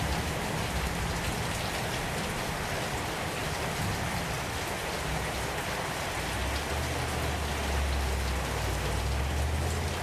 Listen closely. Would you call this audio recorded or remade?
recorded